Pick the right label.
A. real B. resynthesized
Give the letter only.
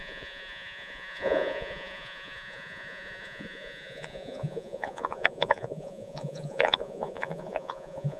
B